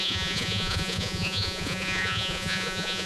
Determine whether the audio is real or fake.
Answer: fake